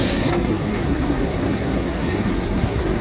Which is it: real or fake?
fake